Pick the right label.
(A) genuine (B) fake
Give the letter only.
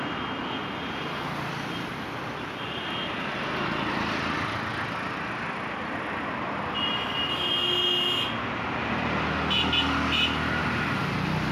A